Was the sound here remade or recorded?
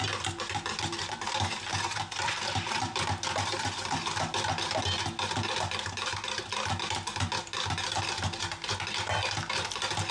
recorded